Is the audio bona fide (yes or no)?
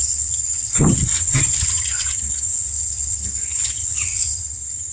no